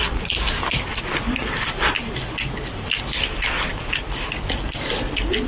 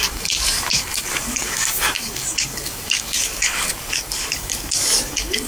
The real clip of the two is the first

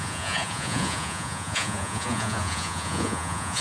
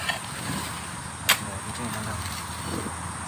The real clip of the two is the second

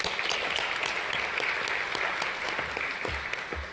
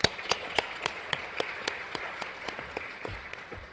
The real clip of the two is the first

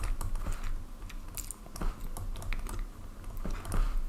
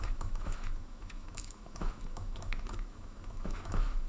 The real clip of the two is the first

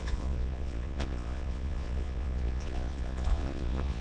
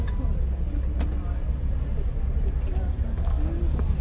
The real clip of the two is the second